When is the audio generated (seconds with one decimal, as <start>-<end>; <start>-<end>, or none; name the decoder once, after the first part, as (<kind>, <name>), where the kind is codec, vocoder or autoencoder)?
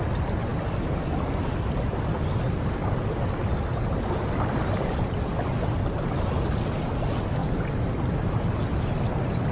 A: none